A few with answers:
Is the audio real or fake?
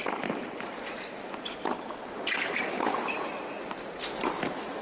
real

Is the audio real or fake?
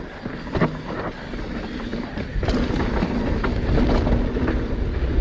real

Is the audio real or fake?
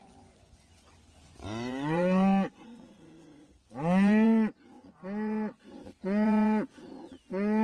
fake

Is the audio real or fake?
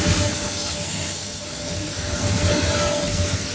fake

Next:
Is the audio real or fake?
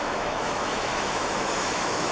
fake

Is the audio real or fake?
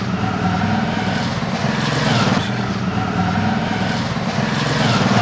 real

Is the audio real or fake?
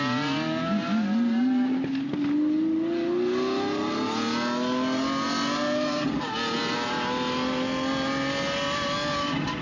real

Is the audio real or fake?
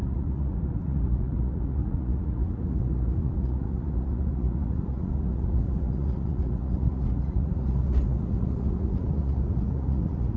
fake